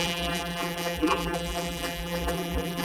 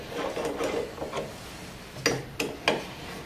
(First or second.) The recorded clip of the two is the second